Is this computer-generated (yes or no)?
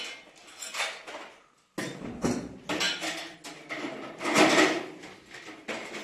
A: no